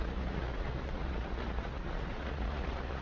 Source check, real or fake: fake